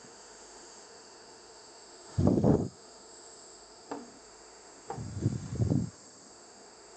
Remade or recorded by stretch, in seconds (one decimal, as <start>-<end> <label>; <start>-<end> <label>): 0.0-5.0 remade; 5.0-6.3 recorded; 6.3-7.0 remade